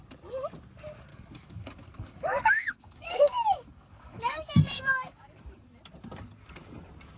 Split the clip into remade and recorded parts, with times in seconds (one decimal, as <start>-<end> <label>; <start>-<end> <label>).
0.0-1.1 recorded; 1.1-5.4 remade; 5.4-7.2 recorded